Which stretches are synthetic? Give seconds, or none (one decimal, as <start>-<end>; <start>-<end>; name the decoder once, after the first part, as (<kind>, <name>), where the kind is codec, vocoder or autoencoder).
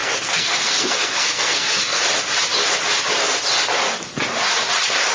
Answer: 0.0-2.0 (codec, SNAC)